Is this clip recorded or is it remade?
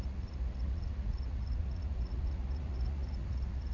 remade